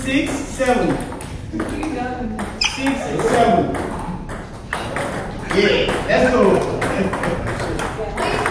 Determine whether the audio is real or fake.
real